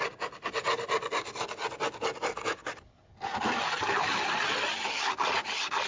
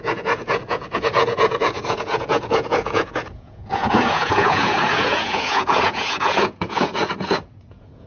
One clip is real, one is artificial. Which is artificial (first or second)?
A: second